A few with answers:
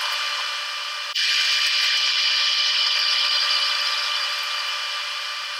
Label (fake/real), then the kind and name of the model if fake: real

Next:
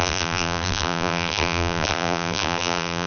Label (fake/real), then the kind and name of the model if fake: fake, vocoder, BigVGAN v2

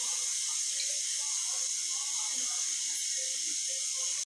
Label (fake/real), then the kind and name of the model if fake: real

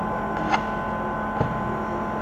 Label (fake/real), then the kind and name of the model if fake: real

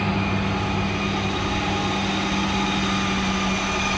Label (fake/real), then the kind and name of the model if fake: real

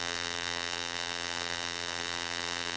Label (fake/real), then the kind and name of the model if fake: fake, vocoder, BigVGAN v2